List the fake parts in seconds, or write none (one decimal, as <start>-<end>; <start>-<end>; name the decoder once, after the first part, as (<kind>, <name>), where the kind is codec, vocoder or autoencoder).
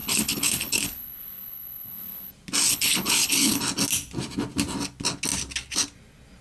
0.0-2.3 (codec, HILCodec); 2.7-3.6